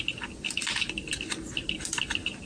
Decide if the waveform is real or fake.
real